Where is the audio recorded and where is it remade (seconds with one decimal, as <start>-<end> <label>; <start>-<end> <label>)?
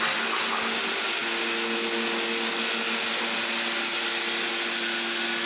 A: 0.0-5.5 recorded